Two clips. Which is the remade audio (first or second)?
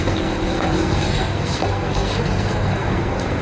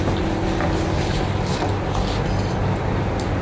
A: first